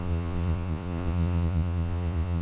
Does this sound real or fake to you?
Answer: fake